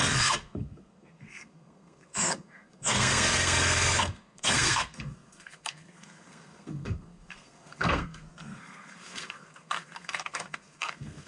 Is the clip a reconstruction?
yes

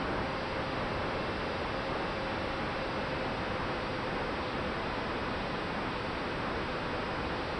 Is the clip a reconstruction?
no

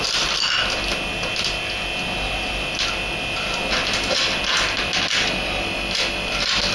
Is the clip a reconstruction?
no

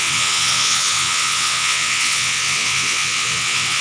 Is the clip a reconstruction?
yes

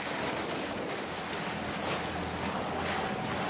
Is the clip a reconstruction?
no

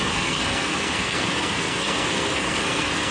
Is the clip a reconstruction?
yes